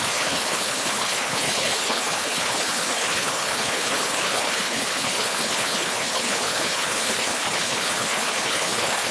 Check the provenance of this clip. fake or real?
fake